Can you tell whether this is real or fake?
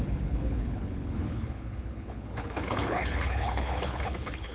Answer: fake